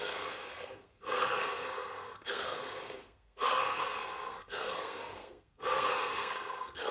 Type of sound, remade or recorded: remade